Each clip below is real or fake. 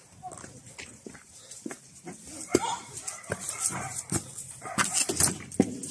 real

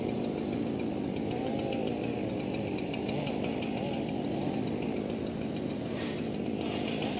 real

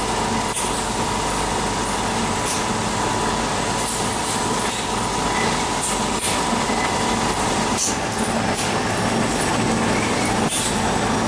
real